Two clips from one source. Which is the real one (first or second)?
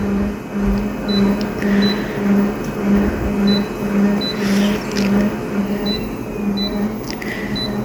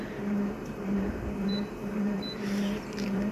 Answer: first